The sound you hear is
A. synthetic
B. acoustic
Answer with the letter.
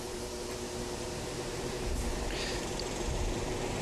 A